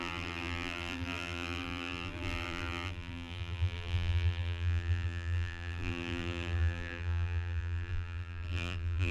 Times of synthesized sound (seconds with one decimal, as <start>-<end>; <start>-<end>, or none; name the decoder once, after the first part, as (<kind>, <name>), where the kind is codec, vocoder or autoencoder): 0.0-9.1 (vocoder, BigVGAN v2)